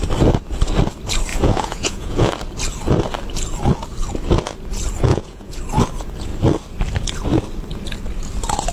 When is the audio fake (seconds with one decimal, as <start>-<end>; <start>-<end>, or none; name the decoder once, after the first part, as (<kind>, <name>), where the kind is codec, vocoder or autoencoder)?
1.3-2.3 (vocoder, Vocos); 5.1-5.6